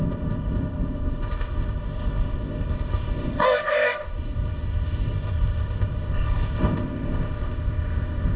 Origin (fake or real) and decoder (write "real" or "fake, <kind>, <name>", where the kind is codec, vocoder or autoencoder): fake, codec, ZipCodec